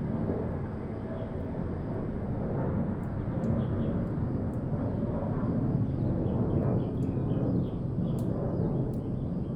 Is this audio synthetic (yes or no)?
no